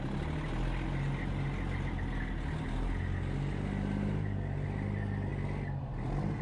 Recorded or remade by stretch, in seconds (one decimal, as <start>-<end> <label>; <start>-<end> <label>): 0.0-6.4 recorded

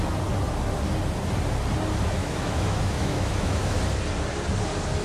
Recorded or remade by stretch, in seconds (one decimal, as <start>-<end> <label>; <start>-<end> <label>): 0.0-2.2 recorded; 2.2-3.8 remade; 3.8-5.0 recorded